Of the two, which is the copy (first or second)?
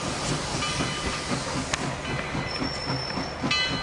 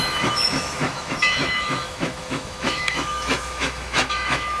second